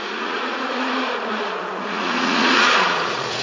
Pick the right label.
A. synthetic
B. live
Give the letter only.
A